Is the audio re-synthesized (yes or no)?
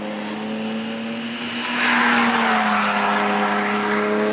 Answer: no